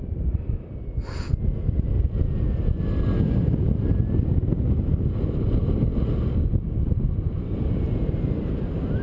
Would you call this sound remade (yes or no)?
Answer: no